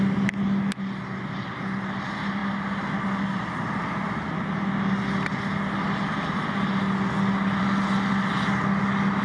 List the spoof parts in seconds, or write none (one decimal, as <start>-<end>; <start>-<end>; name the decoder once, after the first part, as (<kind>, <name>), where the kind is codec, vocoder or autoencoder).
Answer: none

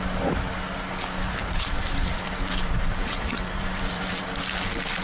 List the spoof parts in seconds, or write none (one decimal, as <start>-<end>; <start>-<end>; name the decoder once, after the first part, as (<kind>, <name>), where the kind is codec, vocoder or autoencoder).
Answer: 1.4-4.4 (vocoder, BigVGAN v2)

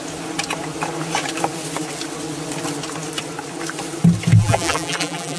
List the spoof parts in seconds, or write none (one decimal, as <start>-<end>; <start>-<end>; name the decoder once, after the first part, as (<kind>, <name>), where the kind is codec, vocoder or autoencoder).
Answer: 4.4-5.4 (vocoder, BigVGAN v2)

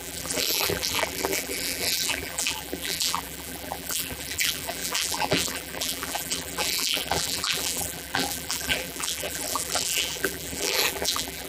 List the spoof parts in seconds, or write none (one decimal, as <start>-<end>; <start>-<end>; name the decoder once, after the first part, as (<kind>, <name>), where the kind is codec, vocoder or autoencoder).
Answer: 0.0-11.5 (vocoder, BigVGAN v2)

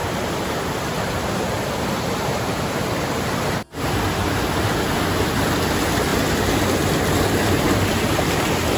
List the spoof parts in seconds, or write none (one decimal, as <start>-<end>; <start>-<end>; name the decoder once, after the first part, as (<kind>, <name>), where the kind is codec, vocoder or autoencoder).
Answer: 0.0-0.7 (vocoder, BigVGAN v2); 2.3-3.3

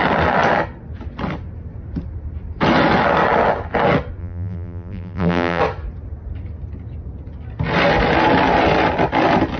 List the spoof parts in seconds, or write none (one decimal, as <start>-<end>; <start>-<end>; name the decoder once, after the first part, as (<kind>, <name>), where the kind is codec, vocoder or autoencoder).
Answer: 4.2-5.6 (vocoder, BigVGAN v2)

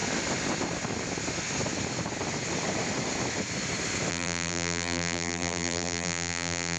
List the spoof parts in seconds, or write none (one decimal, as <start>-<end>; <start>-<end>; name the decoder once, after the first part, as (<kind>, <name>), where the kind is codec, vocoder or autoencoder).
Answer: 4.1-6.8 (vocoder, BigVGAN v2)

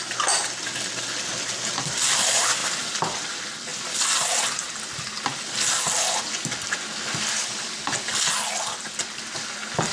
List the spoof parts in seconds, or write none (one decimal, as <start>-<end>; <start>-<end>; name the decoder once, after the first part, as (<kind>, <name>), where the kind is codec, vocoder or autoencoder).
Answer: none